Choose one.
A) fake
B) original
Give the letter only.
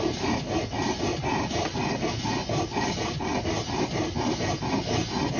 B